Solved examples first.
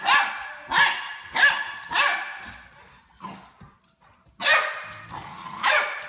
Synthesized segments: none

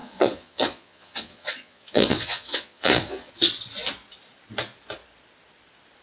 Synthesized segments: 0.0-3.3

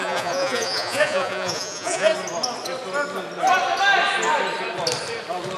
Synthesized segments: 0.0-2.1

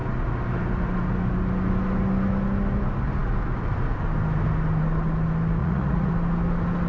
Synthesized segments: 5.6-6.1